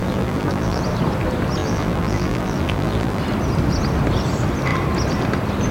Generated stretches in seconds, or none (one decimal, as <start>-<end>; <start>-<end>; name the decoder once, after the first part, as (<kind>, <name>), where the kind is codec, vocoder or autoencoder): 0.0-0.8 (vocoder, BigVGAN v2); 1.6-3.2

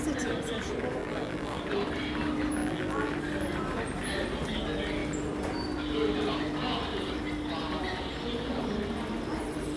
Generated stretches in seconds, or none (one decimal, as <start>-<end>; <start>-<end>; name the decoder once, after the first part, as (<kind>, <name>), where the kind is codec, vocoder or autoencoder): 1.0-1.6 (vocoder, BigVGAN v2); 2.6-3.1

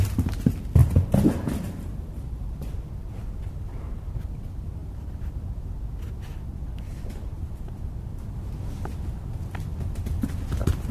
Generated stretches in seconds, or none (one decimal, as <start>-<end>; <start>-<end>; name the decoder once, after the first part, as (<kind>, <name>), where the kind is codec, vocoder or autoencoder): 0.8-2.5 (vocoder, BigVGAN v2)